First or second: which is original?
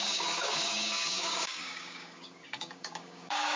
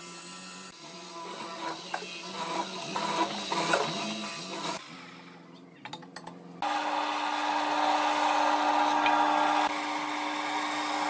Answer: second